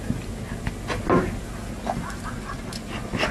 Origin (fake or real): real